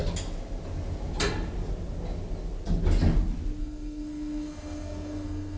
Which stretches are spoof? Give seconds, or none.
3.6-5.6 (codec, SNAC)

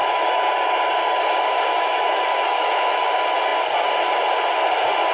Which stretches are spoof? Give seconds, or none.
0.0-0.5 (autoencoder, DAC-VAE); 1.7-3.1

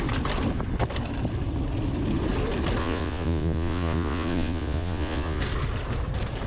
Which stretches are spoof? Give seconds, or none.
2.8-5.4 (vocoder, Vocos)

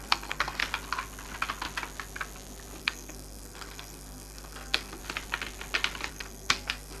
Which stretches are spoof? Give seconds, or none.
0.0-0.6 (codec, SNAC); 2.8-5.0; 6.1-7.0

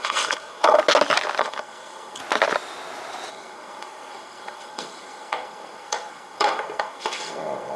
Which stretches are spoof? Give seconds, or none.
0.0-0.8 (codec, SNAC); 1.4-2.2; 3.3-7.8

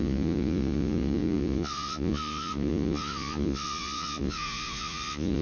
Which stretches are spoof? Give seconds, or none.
0.0-5.4 (vocoder, Vocos)